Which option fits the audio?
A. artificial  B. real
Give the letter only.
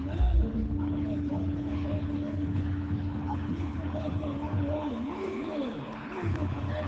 A